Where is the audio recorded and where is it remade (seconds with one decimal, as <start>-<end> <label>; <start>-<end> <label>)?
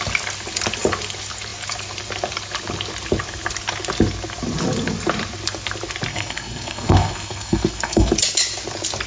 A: 0.0-6.1 recorded; 6.1-8.1 remade; 8.1-9.1 recorded